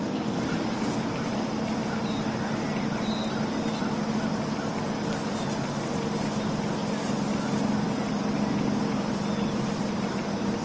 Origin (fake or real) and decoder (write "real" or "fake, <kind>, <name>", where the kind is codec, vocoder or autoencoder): real